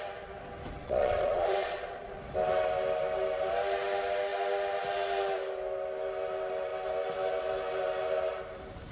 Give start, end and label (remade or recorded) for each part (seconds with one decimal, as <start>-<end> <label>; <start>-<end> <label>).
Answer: 0.0-0.8 recorded; 0.8-2.2 remade; 2.2-8.9 recorded